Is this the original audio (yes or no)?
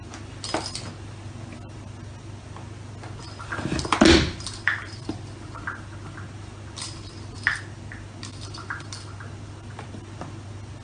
yes